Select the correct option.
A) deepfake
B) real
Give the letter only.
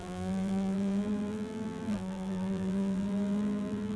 A